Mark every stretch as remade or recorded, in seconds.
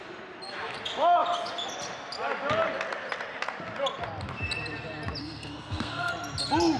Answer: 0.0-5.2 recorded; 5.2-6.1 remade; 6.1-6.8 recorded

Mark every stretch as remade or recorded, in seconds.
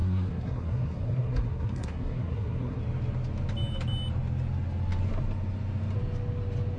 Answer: 0.0-2.8 remade; 2.8-6.8 recorded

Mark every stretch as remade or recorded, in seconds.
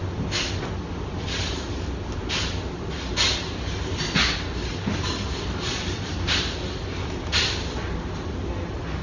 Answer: 0.0-9.0 recorded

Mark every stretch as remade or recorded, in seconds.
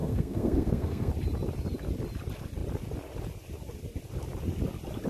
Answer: 0.0-1.1 remade; 1.1-5.1 recorded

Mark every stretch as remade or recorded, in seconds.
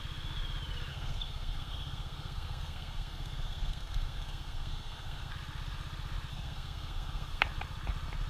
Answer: 0.0-0.9 recorded; 0.9-5.3 remade; 5.3-6.3 recorded; 6.3-7.4 remade; 7.4-8.3 recorded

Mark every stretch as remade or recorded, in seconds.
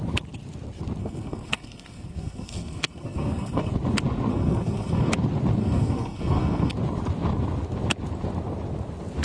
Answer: 0.0-1.0 recorded; 1.0-3.7 remade; 3.7-4.3 recorded; 4.3-5.1 remade; 5.1-5.6 recorded; 5.6-6.7 remade; 6.7-9.2 recorded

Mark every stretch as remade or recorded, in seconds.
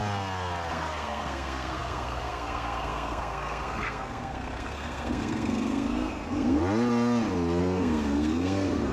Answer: 0.0-0.7 recorded; 0.7-6.6 remade; 6.6-7.6 recorded; 7.6-8.9 remade